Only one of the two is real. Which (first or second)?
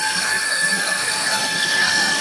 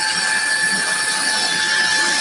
second